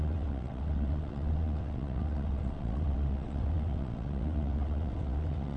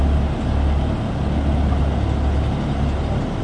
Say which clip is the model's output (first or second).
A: first